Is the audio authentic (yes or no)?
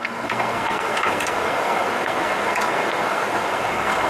no